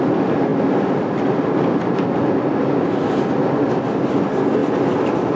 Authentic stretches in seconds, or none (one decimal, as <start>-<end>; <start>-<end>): 0.0-5.3